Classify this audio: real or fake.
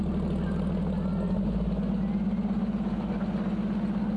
real